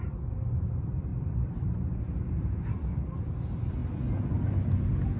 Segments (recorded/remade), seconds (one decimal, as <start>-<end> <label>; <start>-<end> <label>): 0.0-1.1 recorded; 1.1-2.0 remade; 2.0-5.2 recorded

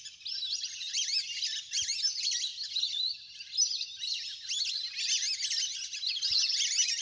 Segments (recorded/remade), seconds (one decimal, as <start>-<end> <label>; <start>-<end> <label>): 0.0-7.0 recorded